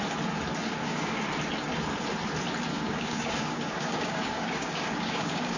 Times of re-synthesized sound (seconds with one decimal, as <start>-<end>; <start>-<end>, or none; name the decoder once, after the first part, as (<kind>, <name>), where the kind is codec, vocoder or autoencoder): 0.6-1.2 (codec, DAC); 2.7-5.6